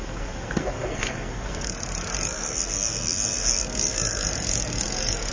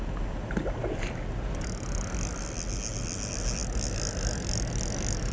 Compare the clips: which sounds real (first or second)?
second